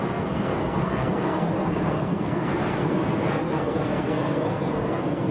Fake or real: fake